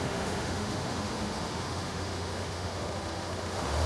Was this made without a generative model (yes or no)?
no